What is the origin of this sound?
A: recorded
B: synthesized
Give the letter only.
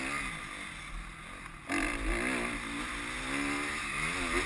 A